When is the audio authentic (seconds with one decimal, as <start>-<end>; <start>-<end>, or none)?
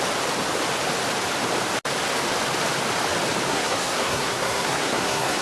0.0-3.5